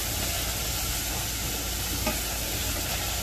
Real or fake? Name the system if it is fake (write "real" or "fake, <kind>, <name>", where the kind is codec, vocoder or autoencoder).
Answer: real